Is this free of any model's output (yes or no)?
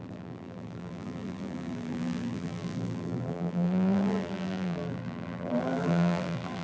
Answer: no